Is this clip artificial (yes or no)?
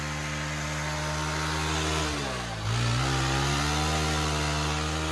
no